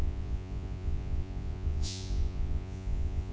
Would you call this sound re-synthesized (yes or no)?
yes